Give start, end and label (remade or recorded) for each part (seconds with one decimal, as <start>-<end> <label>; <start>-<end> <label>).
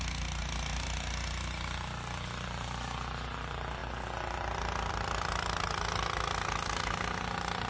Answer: 0.0-7.7 recorded